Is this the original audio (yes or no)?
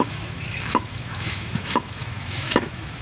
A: no